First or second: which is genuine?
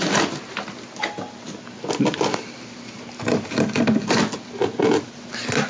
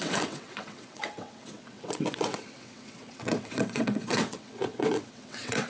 first